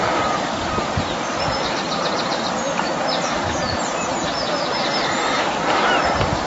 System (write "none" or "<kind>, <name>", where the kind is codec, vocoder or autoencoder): vocoder, BigVGAN v2